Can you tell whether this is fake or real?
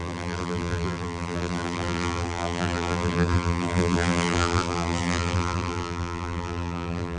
fake